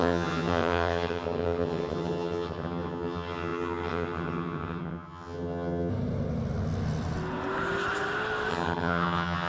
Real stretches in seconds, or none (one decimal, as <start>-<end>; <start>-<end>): 5.9-8.5